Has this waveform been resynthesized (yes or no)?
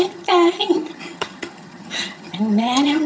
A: yes